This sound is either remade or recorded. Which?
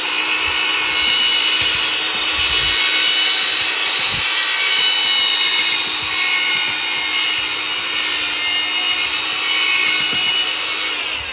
recorded